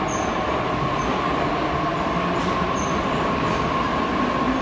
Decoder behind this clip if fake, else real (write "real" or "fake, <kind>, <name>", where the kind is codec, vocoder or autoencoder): real